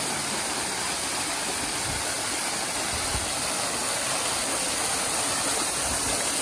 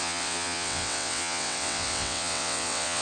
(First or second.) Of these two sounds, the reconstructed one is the second